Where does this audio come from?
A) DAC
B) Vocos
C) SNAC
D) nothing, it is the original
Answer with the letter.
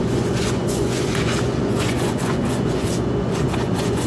B